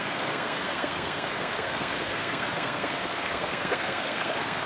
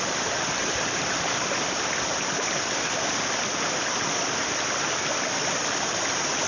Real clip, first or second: second